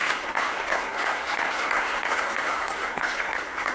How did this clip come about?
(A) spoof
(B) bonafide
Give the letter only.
A